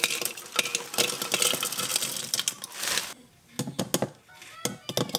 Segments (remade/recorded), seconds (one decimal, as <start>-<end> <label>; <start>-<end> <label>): 0.0-5.2 recorded